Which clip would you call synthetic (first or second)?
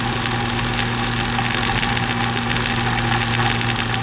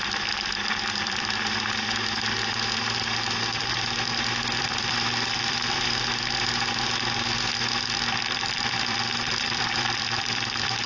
second